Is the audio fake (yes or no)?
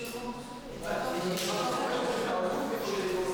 no